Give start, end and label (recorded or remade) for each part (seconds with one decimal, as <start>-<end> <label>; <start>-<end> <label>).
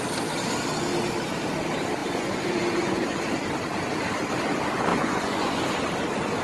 0.0-2.0 recorded; 2.0-3.2 remade; 3.2-4.9 recorded; 4.9-5.6 remade; 5.6-6.4 recorded